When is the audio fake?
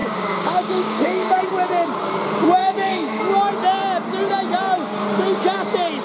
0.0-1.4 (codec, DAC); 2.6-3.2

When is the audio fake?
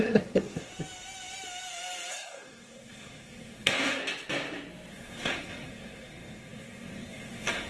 0.0-0.7 (codec, SNAC); 2.1-4.0; 4.9-7.7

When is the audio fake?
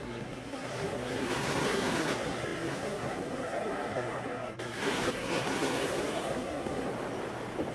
0.0-6.9 (codec, SNAC)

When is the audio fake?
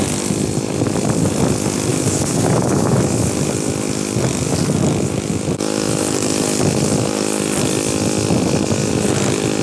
1.9-3.0 (codec, DAC)